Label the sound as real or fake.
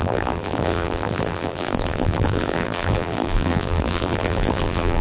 fake